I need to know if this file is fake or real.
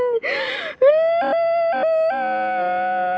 real